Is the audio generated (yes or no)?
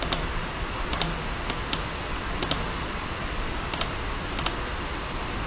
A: no